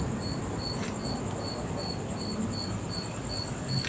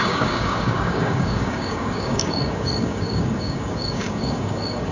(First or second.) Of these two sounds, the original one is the first